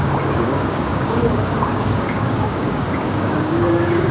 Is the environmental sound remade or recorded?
remade